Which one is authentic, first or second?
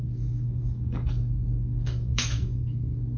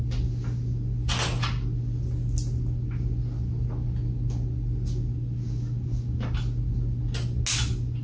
second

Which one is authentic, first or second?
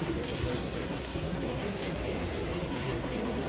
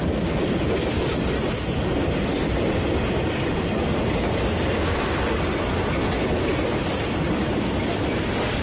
second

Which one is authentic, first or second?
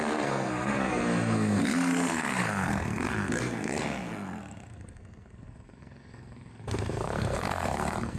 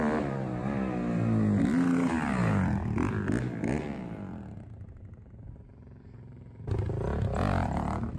second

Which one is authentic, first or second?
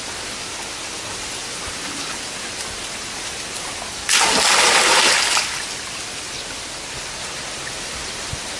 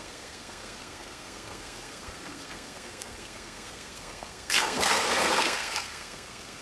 first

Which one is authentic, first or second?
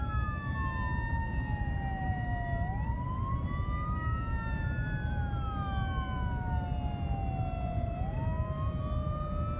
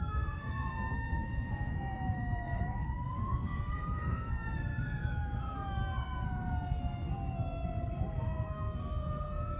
first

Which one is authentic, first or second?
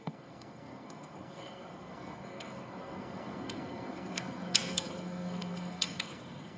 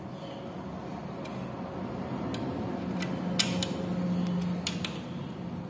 second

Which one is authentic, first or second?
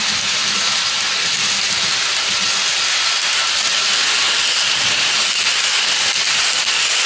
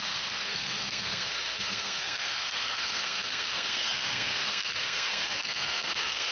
first